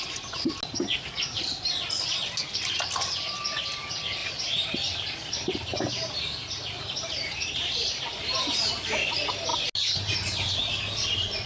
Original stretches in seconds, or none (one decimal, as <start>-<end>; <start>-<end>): 0.0-4.2; 8.7-11.5